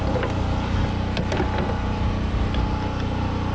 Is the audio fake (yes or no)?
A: no